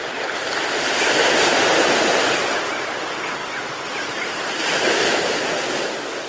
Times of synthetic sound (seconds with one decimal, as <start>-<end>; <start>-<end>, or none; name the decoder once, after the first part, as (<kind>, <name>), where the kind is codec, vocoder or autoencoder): 0.0-0.9 (vocoder, BigVGAN v2); 1.5-2.7; 3.4-4.8